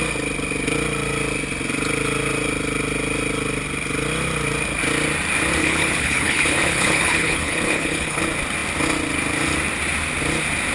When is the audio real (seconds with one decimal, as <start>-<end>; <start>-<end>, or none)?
0.0-5.6; 8.2-10.7

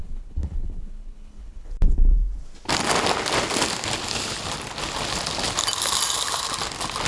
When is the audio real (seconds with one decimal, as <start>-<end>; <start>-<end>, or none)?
1.7-7.1

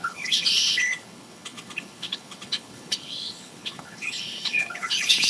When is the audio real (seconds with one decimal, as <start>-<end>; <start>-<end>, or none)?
none